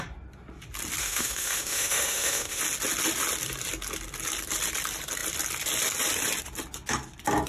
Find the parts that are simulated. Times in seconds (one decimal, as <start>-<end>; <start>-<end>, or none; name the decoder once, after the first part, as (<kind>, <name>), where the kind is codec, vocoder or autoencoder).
1.0-2.6 (autoencoder, DAC-VAE)